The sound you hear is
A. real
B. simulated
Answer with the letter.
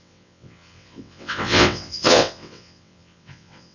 B